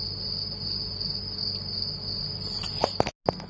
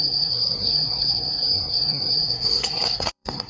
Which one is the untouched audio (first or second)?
first